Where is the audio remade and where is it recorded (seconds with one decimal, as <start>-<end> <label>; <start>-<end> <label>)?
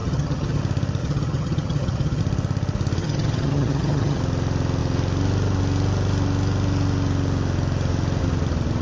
0.0-0.6 remade; 0.6-1.0 recorded; 1.0-2.2 remade; 2.2-3.0 recorded; 3.0-4.2 remade; 4.2-8.8 recorded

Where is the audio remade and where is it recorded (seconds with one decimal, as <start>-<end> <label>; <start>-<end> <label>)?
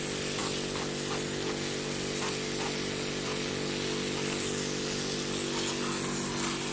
0.0-6.7 recorded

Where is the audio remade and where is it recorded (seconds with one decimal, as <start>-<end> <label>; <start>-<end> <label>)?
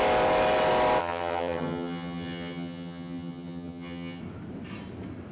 0.0-1.0 recorded; 1.0-4.2 remade; 4.2-5.3 recorded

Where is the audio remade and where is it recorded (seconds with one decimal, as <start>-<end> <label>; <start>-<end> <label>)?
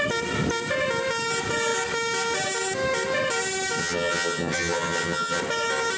0.0-3.8 recorded; 3.8-5.4 remade; 5.4-6.0 recorded